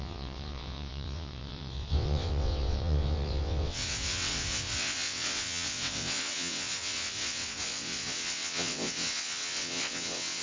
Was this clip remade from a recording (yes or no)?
yes